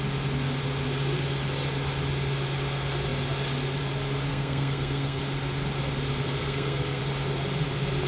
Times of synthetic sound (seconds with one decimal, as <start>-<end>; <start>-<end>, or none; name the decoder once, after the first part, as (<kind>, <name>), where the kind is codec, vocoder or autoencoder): 4.3-5.2 (codec, SNAC); 6.4-7.0

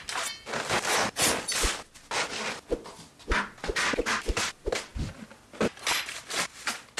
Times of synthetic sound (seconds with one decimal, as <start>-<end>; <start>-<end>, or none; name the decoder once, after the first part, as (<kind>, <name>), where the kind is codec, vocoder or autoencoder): none

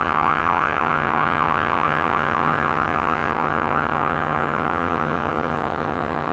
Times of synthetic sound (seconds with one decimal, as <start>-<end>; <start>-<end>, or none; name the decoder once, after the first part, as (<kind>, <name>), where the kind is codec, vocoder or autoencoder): 0.0-6.3 (vocoder, HiFi-GAN)

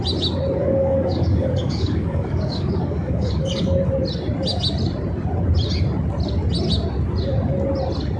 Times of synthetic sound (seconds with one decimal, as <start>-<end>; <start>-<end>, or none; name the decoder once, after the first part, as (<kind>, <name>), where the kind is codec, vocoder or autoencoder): 0.6-3.5 (codec, DAC)